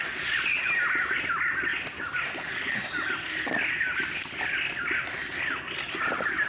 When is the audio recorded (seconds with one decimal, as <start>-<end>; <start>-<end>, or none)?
0.7-6.5